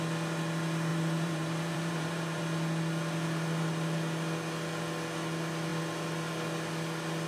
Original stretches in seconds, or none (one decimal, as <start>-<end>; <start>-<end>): 0.0-0.9; 2.4-7.3